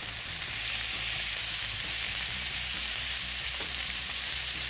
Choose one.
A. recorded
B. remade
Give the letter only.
B